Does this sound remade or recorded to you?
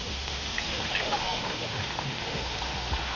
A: remade